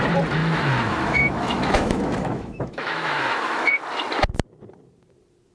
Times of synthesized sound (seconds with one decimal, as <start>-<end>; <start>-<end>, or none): 0.4-3.7